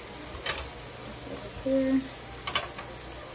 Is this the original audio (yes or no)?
yes